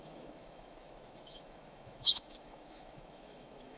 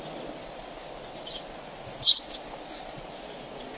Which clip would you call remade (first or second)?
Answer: first